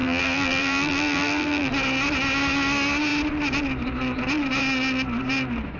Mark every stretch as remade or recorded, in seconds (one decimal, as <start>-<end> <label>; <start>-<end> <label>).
0.0-1.7 remade; 1.7-5.8 recorded